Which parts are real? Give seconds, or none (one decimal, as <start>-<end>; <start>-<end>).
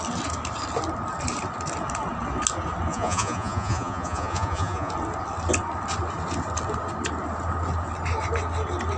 0.0-2.9; 4.9-9.0